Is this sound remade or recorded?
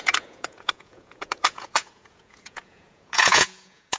remade